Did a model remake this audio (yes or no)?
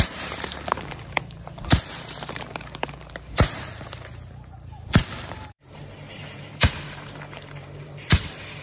yes